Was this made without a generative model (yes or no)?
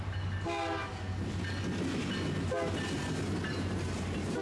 yes